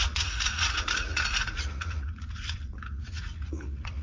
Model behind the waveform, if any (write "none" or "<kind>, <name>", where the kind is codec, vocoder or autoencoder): vocoder, Vocos